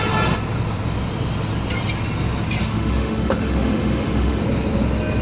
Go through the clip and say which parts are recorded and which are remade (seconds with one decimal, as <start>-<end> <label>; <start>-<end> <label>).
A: 0.0-2.6 recorded; 2.6-4.4 remade; 4.4-5.2 recorded